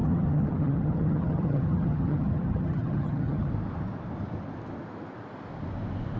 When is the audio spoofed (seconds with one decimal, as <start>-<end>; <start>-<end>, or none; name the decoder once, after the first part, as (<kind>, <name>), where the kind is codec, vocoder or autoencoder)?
0.0-3.5 (vocoder, HiFi-GAN)